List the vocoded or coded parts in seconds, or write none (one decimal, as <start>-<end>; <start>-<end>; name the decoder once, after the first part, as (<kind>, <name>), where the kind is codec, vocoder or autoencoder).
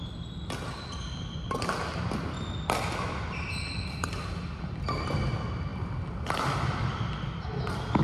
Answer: 5.7-7.0 (vocoder, BigVGAN v2)